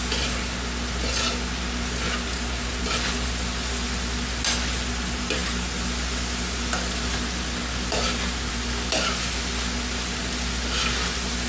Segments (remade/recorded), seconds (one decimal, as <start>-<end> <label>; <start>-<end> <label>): 0.0-11.5 recorded